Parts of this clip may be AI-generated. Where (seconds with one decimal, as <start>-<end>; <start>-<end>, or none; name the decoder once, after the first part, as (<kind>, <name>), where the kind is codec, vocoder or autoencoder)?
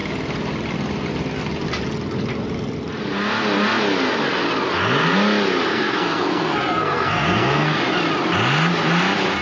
5.7-7.8 (codec, SNAC)